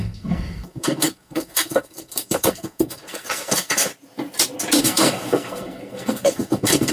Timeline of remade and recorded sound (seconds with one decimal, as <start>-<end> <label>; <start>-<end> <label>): 0.0-3.9 remade; 3.9-4.8 recorded; 4.8-6.9 remade